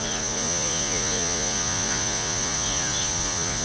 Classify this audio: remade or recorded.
remade